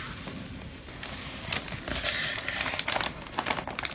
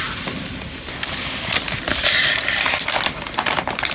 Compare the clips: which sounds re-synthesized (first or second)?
second